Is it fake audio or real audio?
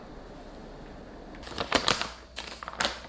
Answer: real